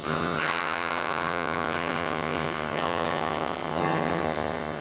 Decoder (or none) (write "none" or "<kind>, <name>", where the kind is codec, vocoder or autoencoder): vocoder, HiFi-GAN